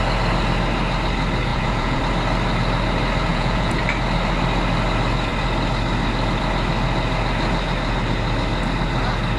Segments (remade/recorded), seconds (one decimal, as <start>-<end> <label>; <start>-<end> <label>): 0.0-1.5 recorded; 1.5-2.0 remade; 2.0-3.3 recorded; 3.3-3.8 remade; 3.8-9.4 recorded